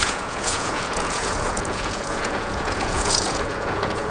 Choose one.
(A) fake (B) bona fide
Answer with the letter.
A